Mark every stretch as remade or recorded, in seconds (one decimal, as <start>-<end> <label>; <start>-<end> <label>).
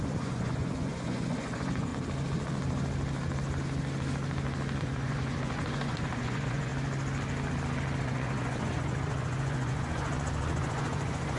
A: 0.0-1.9 remade; 1.9-4.8 recorded; 4.8-6.7 remade; 6.7-8.0 recorded; 8.0-11.4 remade